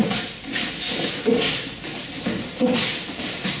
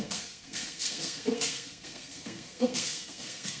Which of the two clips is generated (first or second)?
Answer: second